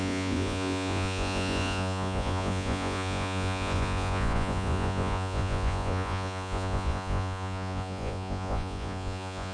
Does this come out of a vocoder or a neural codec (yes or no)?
yes